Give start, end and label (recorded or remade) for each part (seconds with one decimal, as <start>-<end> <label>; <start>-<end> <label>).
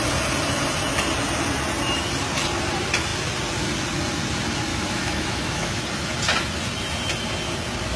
0.0-4.7 recorded; 4.7-5.8 remade; 5.8-8.0 recorded